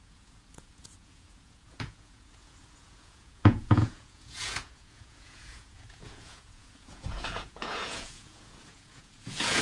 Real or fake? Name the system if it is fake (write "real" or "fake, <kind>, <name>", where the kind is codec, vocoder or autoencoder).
fake, vocoder, Vocos